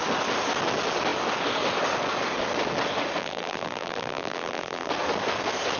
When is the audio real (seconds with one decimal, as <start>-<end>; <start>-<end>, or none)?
0.0-3.2; 4.9-5.8